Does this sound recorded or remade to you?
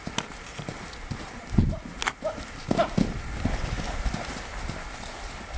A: recorded